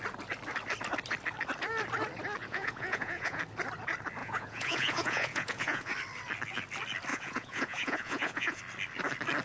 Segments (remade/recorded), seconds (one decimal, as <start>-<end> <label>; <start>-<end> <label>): 0.0-2.4 recorded; 2.4-3.4 remade; 3.4-4.2 recorded; 4.2-5.9 remade; 5.9-7.1 recorded; 7.1-8.6 remade; 8.6-9.4 recorded